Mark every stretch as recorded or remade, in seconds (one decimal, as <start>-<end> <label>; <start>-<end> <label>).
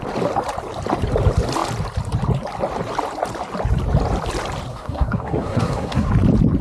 0.0-4.7 recorded; 4.7-6.1 remade; 6.1-6.6 recorded